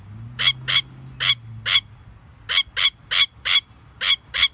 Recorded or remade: recorded